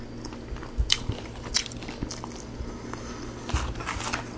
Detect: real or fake real